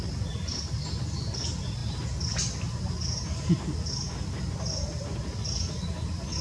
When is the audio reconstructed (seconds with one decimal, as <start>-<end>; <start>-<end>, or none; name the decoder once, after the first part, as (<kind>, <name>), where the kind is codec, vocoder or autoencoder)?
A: none